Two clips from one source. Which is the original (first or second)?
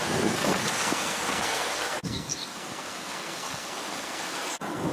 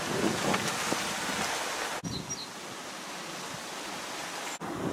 second